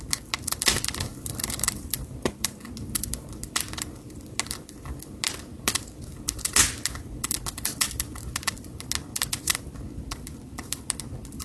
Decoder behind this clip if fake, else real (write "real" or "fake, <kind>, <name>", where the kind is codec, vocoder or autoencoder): real